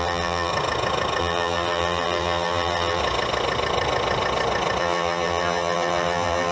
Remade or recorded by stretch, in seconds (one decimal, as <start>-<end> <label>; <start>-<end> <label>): 0.0-0.5 remade; 0.5-1.2 recorded; 1.2-3.0 remade; 3.0-4.8 recorded; 4.8-6.5 remade